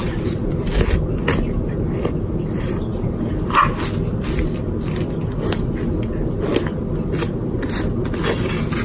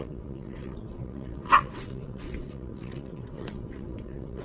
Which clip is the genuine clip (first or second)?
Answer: first